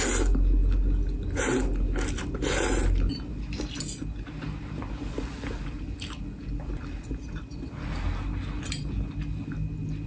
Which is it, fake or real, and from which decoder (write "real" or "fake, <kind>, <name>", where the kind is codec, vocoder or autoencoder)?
real